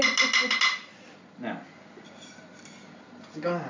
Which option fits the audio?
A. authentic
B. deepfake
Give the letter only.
A